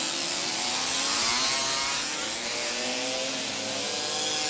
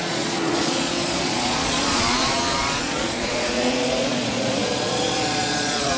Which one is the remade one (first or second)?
second